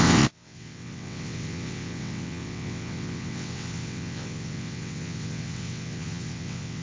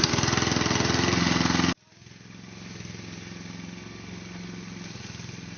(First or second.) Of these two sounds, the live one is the second